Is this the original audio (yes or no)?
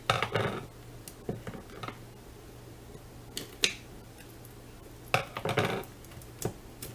yes